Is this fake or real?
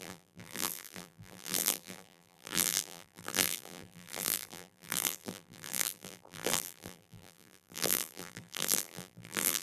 fake